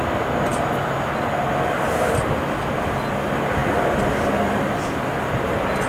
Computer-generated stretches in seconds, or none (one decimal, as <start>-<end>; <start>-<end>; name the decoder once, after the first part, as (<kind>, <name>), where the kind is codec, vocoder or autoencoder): none